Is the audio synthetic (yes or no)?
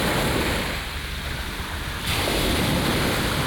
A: no